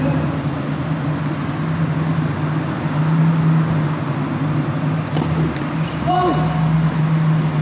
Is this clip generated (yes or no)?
no